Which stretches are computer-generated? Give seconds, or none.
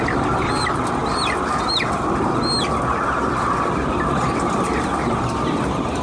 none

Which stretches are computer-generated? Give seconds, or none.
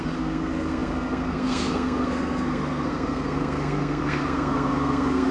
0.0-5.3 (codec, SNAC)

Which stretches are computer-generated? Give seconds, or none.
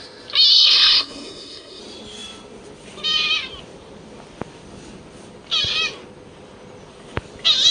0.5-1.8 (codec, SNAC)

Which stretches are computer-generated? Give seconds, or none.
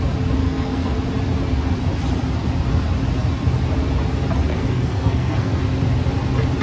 0.4-1.0 (codec, SNAC); 4.5-5.6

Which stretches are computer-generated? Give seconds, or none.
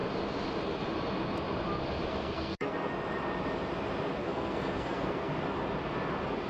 2.1-2.9 (codec, SNAC); 4.2-5.3